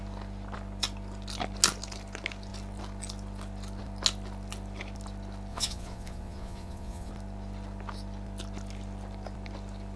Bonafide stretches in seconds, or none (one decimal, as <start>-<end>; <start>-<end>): 0.0-5.5; 7.1-10.0